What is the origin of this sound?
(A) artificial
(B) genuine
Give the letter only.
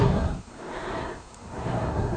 A